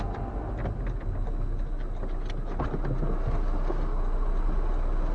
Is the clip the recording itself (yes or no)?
yes